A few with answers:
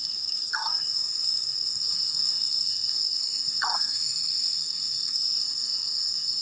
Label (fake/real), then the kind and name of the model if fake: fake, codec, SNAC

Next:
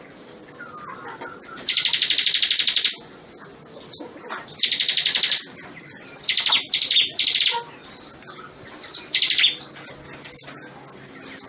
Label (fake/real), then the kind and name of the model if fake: real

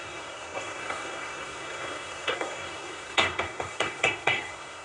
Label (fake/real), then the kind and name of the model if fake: fake, codec, SNAC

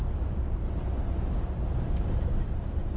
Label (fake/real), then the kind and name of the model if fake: real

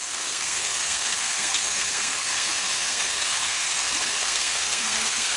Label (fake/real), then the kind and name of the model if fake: fake, codec, SNAC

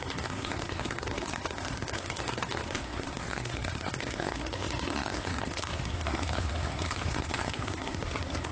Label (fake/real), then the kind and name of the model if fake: fake, codec, SNAC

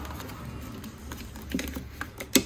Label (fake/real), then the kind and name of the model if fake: real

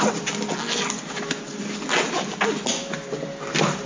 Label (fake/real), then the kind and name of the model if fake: real